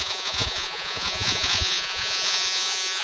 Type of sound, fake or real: fake